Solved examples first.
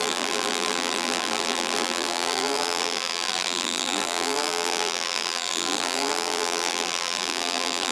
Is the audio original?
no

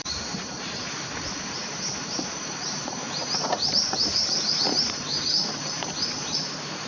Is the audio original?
no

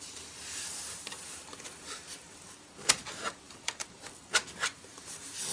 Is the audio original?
no